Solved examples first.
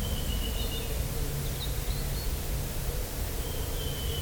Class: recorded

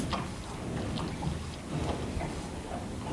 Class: recorded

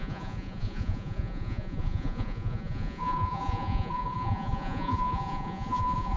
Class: remade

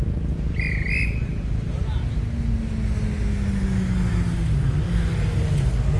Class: recorded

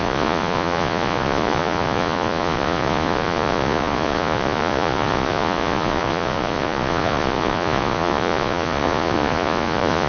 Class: remade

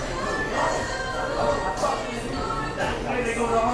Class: recorded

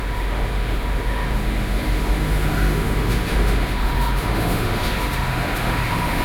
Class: remade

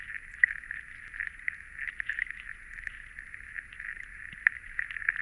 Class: recorded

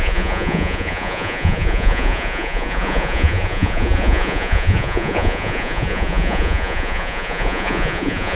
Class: remade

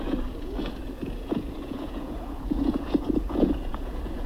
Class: remade